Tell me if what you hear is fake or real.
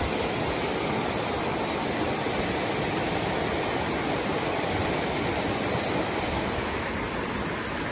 real